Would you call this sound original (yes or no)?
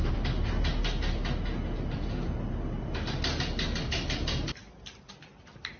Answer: yes